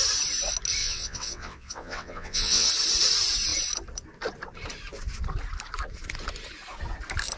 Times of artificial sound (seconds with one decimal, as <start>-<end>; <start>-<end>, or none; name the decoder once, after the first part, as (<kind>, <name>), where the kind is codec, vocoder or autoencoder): 0.8-2.7 (vocoder, WaveNeXt)